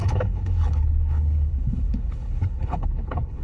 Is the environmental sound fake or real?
fake